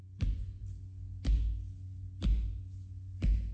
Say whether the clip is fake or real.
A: real